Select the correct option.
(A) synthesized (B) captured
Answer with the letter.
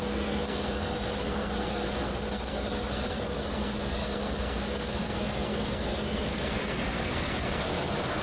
A